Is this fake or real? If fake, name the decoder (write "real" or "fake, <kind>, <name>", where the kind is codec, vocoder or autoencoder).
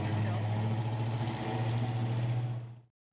real